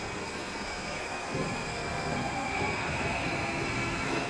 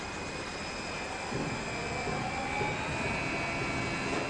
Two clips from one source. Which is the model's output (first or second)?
first